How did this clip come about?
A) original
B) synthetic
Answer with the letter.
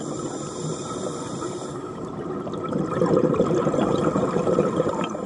B